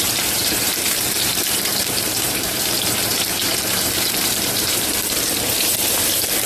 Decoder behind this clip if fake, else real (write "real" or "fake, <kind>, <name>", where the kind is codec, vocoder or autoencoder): fake, vocoder, BigVGAN v2